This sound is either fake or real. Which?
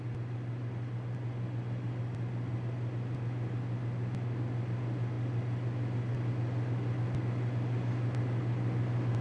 real